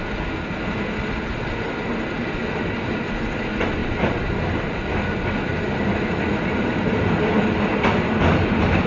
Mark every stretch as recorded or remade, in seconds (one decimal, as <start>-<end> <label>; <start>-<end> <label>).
0.0-3.8 recorded; 3.8-4.9 remade; 4.9-8.9 recorded